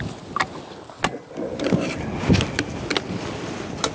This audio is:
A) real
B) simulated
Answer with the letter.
A